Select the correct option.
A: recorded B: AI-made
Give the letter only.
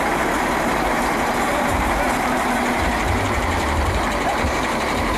B